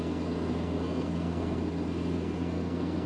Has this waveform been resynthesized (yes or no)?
yes